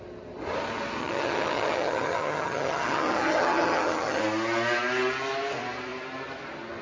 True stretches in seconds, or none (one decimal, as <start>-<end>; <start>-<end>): 0.0-1.0; 4.2-6.8